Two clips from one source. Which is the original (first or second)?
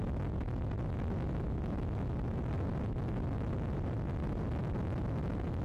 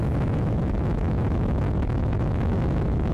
first